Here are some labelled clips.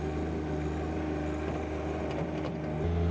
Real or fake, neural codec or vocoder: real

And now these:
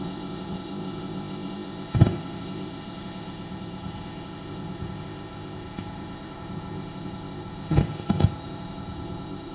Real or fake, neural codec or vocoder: fake, codec, ZipCodec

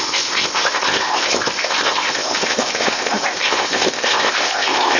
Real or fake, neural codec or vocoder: fake, codec, ZipCodec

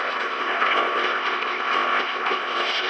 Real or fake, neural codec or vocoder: fake, codec, ZipCodec